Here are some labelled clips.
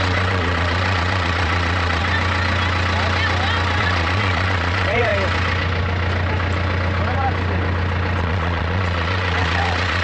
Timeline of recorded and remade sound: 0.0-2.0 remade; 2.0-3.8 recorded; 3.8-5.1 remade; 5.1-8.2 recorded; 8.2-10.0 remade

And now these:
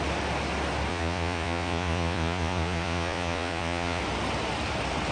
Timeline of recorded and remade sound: 0.0-0.9 recorded; 0.9-4.0 remade; 4.0-5.1 recorded

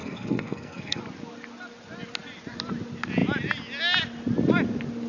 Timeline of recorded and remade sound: 0.0-1.0 remade; 1.0-5.1 recorded

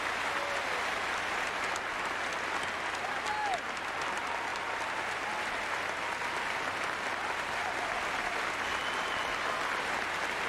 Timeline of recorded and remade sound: 0.0-4.5 recorded; 4.5-5.6 remade; 5.6-7.6 recorded; 7.6-8.5 remade; 8.5-10.5 recorded

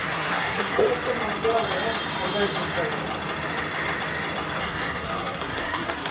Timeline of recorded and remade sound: 0.0-0.9 remade; 0.9-4.6 recorded; 4.6-6.1 remade

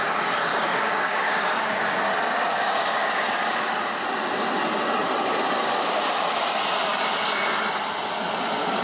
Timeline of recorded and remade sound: 0.0-0.5 recorded; 0.5-1.8 remade; 1.8-2.5 recorded; 2.5-3.2 remade; 3.2-8.8 recorded

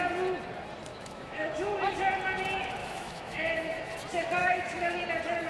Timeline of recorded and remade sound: 0.0-0.9 recorded; 0.9-1.7 remade; 1.7-2.8 recorded; 2.8-3.8 remade; 3.8-4.4 recorded; 4.4-5.0 remade; 5.0-5.5 recorded